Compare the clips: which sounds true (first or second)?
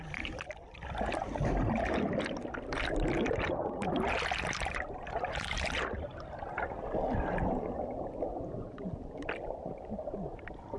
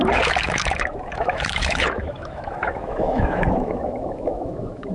first